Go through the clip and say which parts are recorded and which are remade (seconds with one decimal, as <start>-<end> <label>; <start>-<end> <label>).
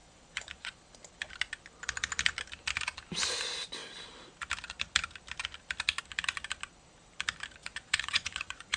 0.0-0.8 remade; 0.8-7.6 recorded; 7.6-8.8 remade